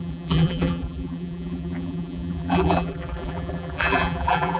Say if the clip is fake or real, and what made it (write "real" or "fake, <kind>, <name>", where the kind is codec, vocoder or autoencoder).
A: fake, vocoder, BigVGAN v2